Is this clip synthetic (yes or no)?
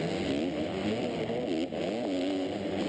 no